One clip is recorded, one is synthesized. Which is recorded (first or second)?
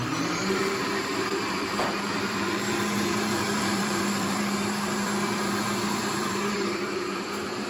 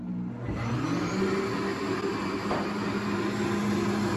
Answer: second